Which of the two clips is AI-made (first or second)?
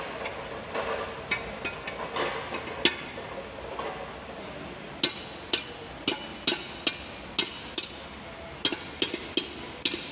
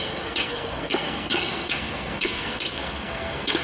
second